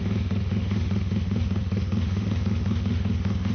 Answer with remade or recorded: remade